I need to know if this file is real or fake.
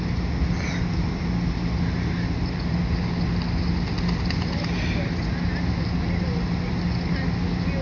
real